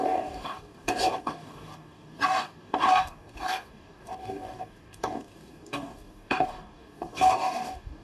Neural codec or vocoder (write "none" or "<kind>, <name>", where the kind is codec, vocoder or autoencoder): codec, DAC